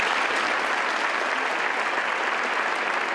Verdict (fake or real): real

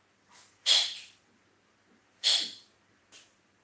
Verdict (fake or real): real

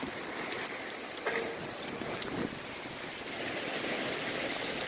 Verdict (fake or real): real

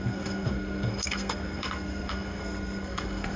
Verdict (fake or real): fake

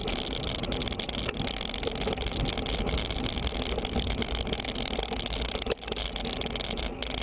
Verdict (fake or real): real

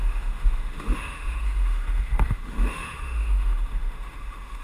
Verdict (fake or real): fake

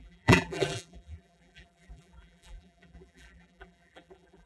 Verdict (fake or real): fake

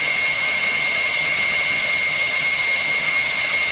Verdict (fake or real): fake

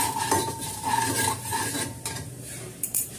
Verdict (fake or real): fake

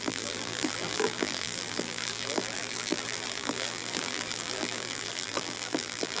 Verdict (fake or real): fake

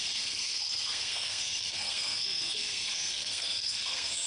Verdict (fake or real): fake